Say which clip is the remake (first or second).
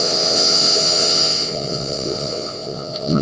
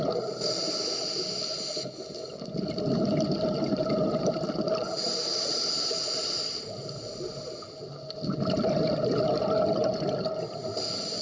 first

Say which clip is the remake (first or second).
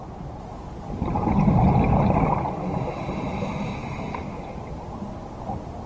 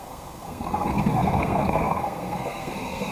second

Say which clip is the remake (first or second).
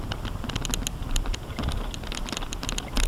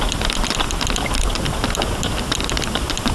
second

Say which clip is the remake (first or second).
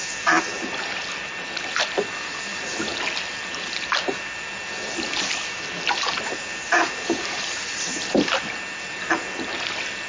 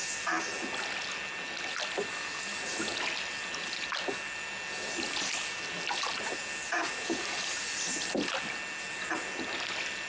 first